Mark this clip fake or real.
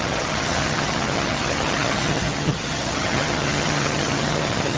fake